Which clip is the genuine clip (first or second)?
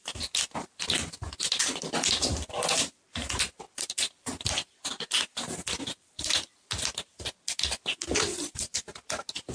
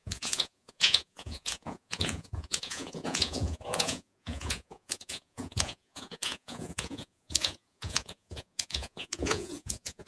first